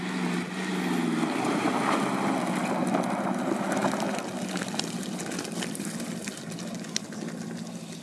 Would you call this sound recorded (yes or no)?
yes